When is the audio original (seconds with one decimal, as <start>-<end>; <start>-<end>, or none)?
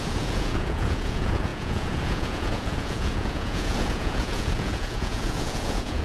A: none